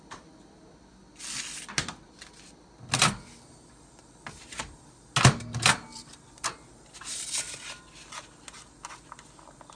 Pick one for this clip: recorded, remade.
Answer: recorded